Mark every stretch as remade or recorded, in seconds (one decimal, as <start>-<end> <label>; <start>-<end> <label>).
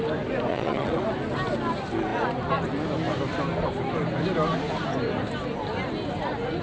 0.0-0.5 recorded; 0.5-1.0 remade; 1.0-6.6 recorded